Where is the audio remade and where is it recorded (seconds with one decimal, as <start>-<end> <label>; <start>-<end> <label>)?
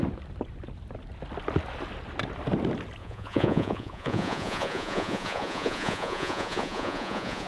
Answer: 0.0-3.0 recorded; 3.0-7.5 remade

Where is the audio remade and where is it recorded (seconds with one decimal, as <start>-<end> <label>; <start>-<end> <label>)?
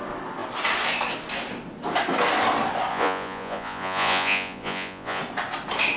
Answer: 0.0-2.9 recorded; 2.9-5.2 remade; 5.2-6.0 recorded